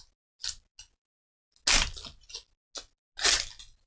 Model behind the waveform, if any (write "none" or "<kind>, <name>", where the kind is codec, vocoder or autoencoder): none